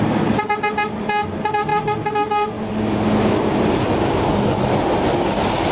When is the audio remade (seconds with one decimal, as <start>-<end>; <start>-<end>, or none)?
none